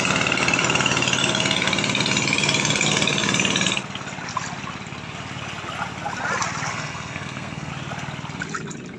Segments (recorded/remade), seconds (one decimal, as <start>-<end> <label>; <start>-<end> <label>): 0.0-6.7 recorded; 6.7-7.7 remade; 7.7-9.0 recorded

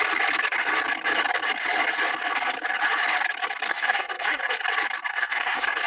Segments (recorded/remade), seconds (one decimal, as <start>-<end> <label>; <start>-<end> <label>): 0.0-3.7 recorded; 3.7-4.4 remade; 4.4-5.1 recorded; 5.1-5.9 remade

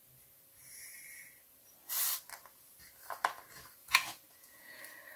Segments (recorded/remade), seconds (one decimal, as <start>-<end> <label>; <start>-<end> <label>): 0.0-3.8 recorded; 3.8-4.8 remade; 4.8-5.2 recorded

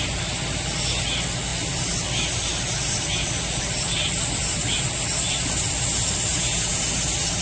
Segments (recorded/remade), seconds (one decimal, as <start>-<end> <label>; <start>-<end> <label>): 0.0-6.3 recorded; 6.3-6.8 remade; 6.8-7.4 recorded

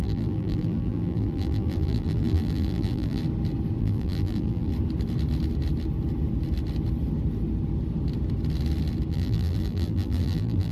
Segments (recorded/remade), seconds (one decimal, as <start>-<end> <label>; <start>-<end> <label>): 0.0-3.2 remade; 3.2-3.8 recorded; 3.8-4.7 remade; 4.7-9.1 recorded; 9.1-10.7 remade

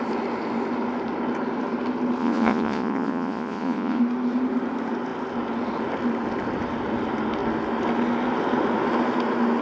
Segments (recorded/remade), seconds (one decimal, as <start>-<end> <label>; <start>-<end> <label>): 0.0-2.2 recorded; 2.2-4.0 remade; 4.0-9.6 recorded

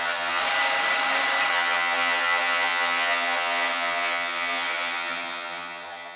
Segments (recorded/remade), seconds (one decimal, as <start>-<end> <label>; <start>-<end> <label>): 0.0-0.4 remade; 0.4-1.5 recorded; 1.5-6.2 remade

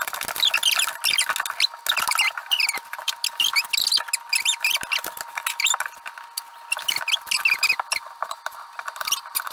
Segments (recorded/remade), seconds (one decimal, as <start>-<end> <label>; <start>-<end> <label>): 0.0-2.4 recorded; 2.4-3.1 remade; 3.1-9.5 recorded